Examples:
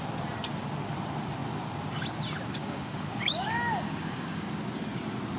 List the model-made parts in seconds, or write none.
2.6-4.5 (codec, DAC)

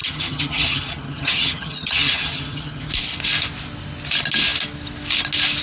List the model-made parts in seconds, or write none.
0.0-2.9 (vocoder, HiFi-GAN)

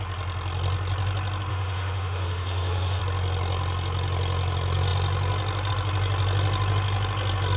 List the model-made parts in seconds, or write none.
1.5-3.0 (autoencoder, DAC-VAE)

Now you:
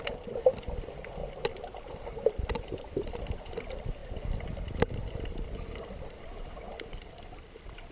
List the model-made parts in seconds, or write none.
none